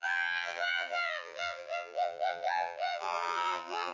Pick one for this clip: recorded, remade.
remade